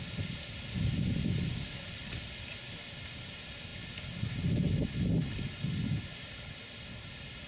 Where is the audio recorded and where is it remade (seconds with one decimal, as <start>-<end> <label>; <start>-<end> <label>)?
0.0-7.5 recorded